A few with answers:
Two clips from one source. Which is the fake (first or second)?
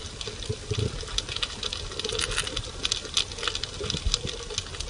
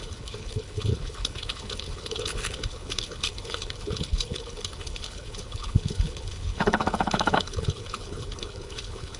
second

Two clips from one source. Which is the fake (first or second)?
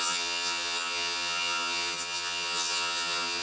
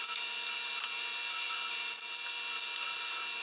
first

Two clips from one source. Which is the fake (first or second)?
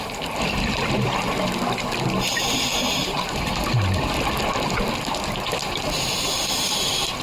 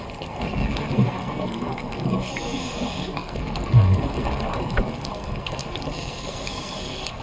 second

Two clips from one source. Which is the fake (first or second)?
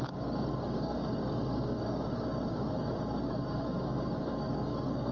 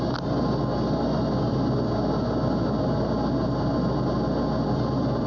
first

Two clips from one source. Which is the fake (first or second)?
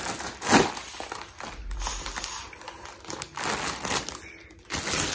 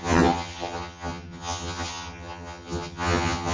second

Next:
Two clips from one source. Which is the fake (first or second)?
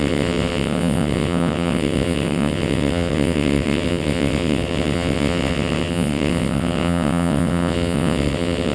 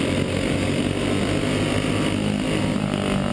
first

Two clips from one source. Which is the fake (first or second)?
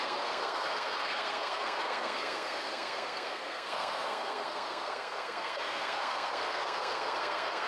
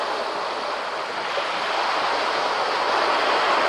first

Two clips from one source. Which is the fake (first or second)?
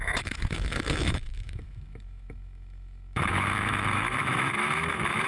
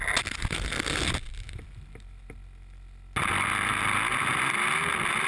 first